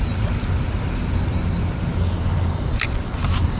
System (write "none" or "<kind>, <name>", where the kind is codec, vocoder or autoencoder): none